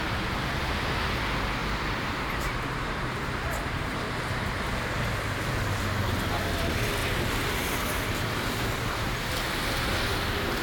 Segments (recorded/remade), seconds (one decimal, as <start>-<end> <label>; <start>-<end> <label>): 0.0-1.6 recorded; 1.6-5.4 remade; 5.4-7.0 recorded; 7.0-8.0 remade; 8.0-10.6 recorded